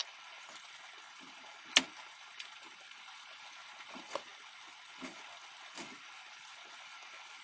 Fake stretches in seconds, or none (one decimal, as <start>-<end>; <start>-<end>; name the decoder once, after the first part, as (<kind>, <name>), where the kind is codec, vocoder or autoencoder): none